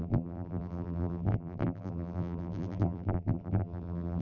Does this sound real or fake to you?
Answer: fake